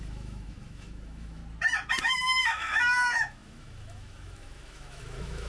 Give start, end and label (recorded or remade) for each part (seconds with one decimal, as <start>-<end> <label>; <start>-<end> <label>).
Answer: 0.0-1.4 remade; 1.4-2.0 recorded; 2.0-5.5 remade

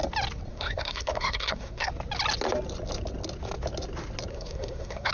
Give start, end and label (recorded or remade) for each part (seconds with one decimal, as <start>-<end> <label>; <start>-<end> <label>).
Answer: 0.0-0.5 recorded; 0.5-1.9 remade; 1.9-4.3 recorded; 4.3-5.1 remade

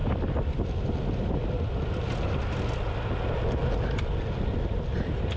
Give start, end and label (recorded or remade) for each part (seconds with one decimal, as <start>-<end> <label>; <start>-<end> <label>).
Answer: 0.0-5.4 recorded

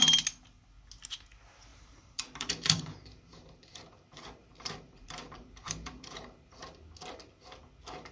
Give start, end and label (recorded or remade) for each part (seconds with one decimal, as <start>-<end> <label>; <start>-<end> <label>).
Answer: 0.0-1.7 recorded; 1.7-6.6 remade; 6.6-8.1 recorded

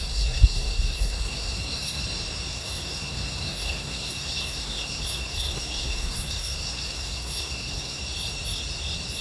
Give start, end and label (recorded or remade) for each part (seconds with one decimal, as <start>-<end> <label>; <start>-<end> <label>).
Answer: 0.0-2.0 remade; 2.0-2.5 recorded; 2.5-8.0 remade; 8.0-9.2 recorded

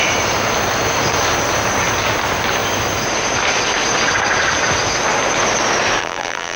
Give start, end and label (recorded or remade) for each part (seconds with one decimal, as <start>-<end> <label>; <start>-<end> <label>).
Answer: 0.0-6.0 recorded; 6.0-6.6 remade

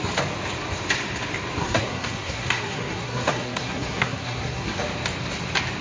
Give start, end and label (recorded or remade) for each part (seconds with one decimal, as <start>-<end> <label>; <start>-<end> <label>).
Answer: 0.0-1.6 recorded; 1.6-4.8 remade; 4.8-5.8 recorded

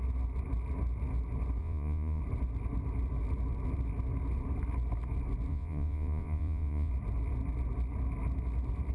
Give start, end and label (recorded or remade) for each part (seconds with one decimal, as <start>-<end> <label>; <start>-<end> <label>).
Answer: 0.0-1.6 recorded; 1.6-2.2 remade; 2.2-5.5 recorded; 5.5-6.9 remade; 6.9-8.9 recorded